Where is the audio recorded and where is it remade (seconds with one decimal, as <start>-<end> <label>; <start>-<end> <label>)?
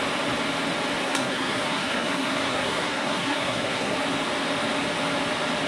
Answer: 0.0-1.0 recorded; 1.0-4.0 remade; 4.0-5.7 recorded